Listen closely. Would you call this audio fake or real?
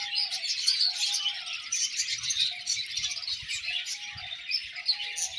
real